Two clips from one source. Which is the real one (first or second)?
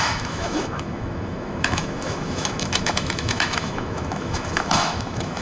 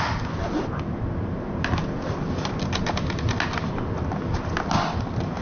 second